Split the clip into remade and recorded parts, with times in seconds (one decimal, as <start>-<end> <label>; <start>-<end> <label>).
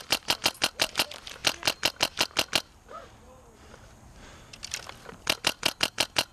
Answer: 0.0-1.4 remade; 1.4-5.2 recorded; 5.2-6.3 remade